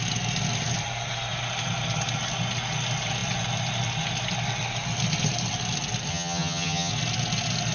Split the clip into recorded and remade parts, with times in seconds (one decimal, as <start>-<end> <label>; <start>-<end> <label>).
0.0-6.1 recorded; 6.1-6.9 remade; 6.9-7.7 recorded